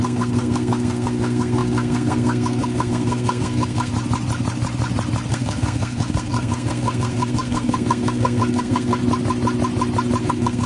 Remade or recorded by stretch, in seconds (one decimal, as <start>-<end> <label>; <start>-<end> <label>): 0.0-3.9 remade; 3.9-5.3 recorded; 5.3-9.0 remade; 9.0-10.2 recorded; 10.2-10.7 remade